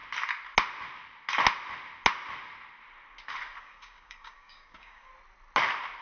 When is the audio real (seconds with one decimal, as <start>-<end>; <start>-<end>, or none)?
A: 0.0-3.6; 5.1-6.0

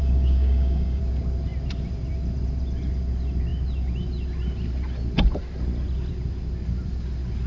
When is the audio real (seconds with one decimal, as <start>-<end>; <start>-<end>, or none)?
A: 1.0-7.5

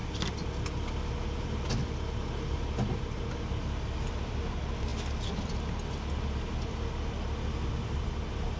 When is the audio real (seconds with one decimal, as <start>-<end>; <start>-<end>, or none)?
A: 0.0-8.6